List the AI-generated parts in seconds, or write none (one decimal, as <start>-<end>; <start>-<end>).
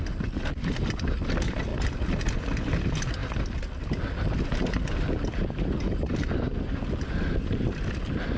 1.7-2.3